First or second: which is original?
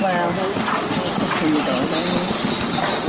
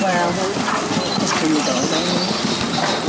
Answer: first